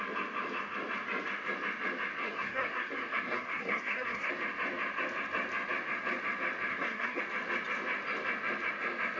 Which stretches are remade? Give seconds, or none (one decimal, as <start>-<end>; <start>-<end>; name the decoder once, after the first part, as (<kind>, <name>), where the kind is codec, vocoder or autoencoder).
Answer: 2.2-4.3 (codec, SNAC); 6.7-7.2